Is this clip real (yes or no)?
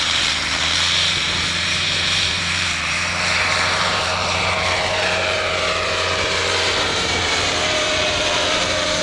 no